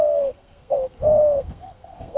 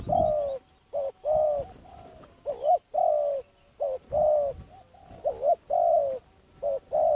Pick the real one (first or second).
second